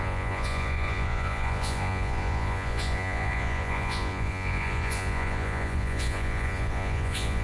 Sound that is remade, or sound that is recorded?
remade